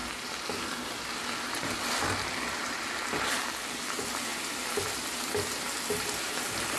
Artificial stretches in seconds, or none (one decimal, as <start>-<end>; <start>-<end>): 4.3-6.3